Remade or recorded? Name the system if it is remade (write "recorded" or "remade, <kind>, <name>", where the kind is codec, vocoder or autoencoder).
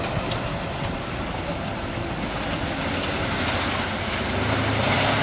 recorded